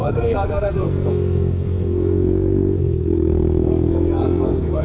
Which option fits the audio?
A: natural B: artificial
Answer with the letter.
B